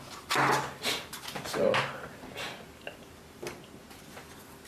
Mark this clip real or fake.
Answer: real